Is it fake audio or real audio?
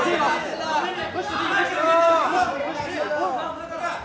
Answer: real